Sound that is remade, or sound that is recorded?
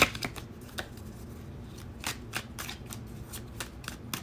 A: recorded